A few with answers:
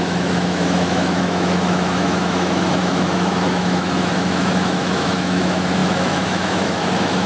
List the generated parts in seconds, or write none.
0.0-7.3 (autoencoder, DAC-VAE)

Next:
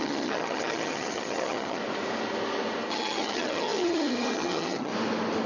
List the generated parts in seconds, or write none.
0.0-1.8 (vocoder, HiFi-GAN); 2.9-4.9